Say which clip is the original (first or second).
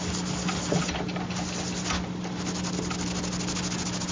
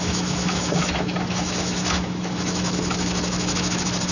first